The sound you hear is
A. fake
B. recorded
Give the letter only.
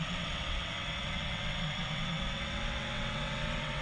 A